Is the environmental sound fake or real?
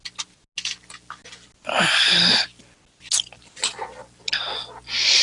real